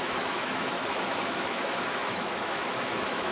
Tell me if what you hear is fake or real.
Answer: fake